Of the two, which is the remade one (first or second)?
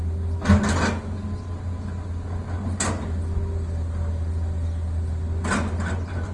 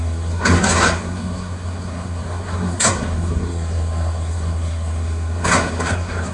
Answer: second